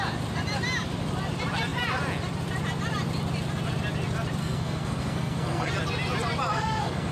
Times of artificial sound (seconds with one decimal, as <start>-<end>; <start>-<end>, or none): 4.4-5.7; 6.5-7.1